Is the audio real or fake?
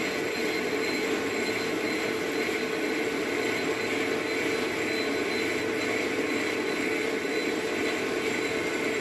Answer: real